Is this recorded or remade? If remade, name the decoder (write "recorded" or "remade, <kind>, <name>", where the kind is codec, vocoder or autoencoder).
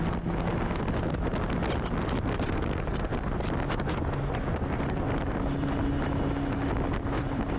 recorded